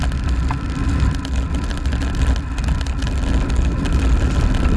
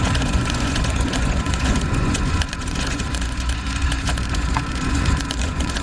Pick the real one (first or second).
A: first